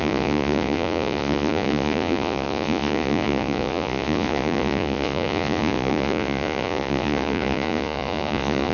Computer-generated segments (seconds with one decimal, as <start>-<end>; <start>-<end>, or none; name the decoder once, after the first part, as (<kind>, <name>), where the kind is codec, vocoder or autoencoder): 0.0-8.7 (vocoder, Vocos)

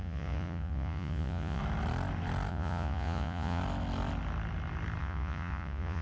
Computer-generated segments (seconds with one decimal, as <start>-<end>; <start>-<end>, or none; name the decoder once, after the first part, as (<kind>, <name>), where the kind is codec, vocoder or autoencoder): 0.0-1.6 (vocoder, Vocos); 2.5-3.6; 5.0-6.0